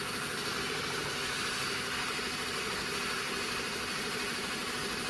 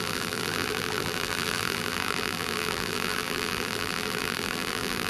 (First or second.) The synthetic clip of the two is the second